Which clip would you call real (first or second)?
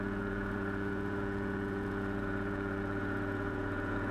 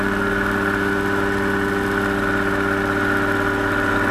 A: second